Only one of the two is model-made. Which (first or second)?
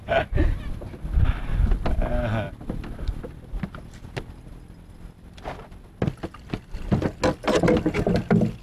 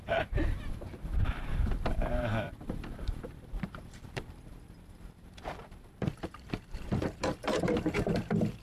second